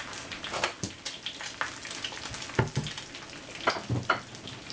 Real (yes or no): yes